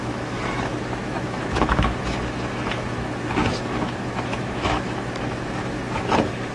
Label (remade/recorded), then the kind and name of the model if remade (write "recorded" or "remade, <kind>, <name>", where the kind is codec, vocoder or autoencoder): remade, autoencoder, DAC-VAE